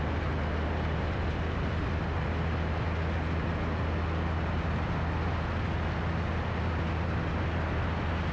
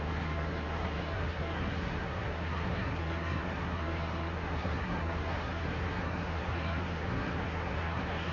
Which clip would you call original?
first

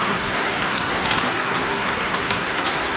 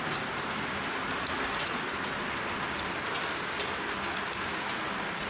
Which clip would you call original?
second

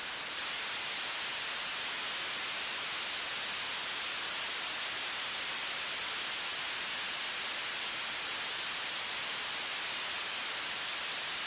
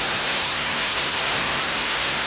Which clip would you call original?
first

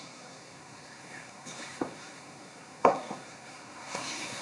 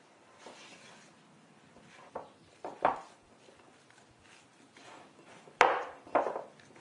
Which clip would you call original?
second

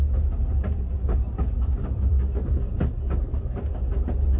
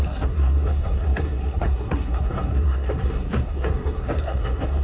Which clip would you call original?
first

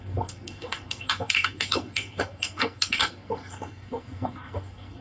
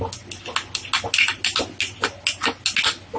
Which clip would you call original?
second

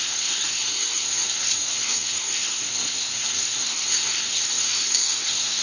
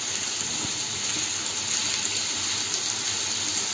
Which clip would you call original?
second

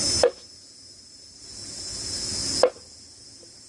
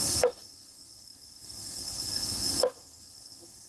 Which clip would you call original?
first